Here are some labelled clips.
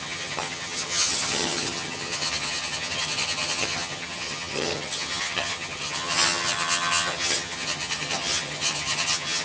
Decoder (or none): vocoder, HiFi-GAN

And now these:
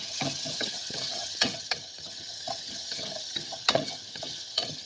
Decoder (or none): vocoder, HiFi-GAN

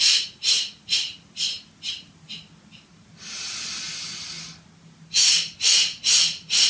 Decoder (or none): none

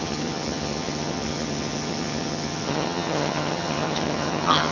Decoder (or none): vocoder, HiFi-GAN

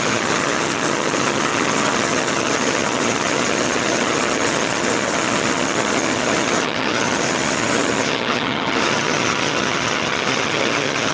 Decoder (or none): vocoder, HiFi-GAN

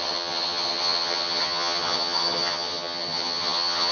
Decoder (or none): vocoder, HiFi-GAN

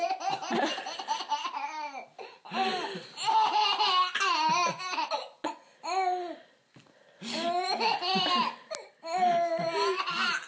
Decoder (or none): none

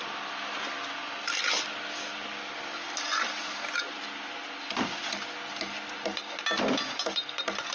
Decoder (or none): none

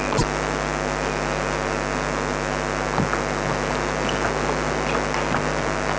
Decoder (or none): none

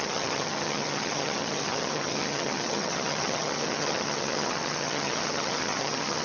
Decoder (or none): vocoder, HiFi-GAN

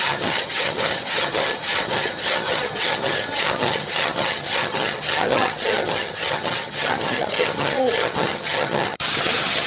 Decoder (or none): vocoder, HiFi-GAN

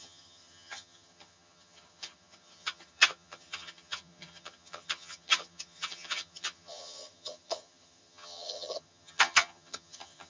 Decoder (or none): vocoder, HiFi-GAN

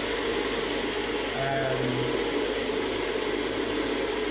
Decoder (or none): none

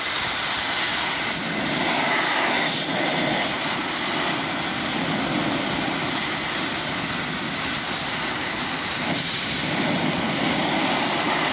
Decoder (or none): none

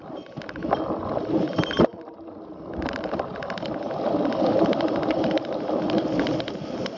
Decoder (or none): none